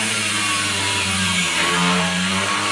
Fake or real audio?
fake